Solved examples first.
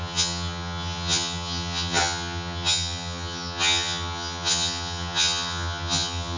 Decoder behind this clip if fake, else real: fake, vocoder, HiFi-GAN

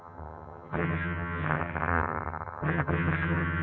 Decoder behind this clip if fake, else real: fake, vocoder, HiFi-GAN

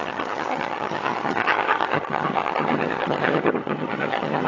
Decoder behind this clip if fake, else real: fake, vocoder, HiFi-GAN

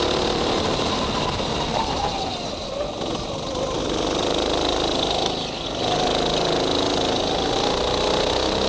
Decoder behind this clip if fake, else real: real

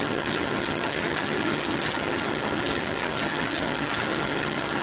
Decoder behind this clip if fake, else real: fake, vocoder, HiFi-GAN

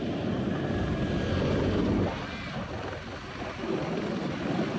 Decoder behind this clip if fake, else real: real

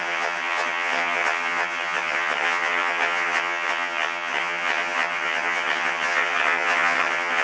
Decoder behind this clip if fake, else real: fake, vocoder, HiFi-GAN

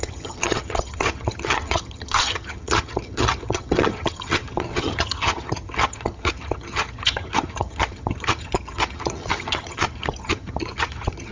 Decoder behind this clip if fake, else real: fake, vocoder, HiFi-GAN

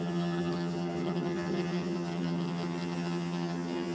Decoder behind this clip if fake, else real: fake, vocoder, HiFi-GAN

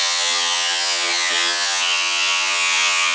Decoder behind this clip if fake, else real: fake, vocoder, HiFi-GAN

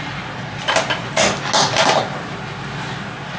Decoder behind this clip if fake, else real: real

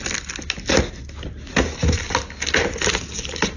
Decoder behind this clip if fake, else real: real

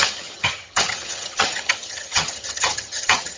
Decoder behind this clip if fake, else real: fake, vocoder, HiFi-GAN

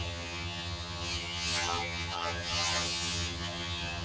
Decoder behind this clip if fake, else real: fake, vocoder, HiFi-GAN